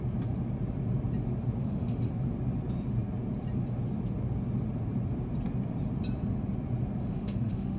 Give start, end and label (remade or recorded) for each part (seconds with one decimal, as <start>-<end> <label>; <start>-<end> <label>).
0.0-1.6 recorded; 1.6-2.1 remade; 2.1-7.0 recorded; 7.0-7.8 remade